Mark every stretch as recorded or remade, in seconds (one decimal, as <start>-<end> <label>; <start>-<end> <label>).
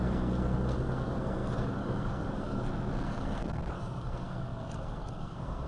0.0-5.7 remade